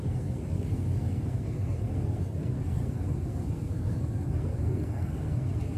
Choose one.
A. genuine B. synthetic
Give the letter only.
B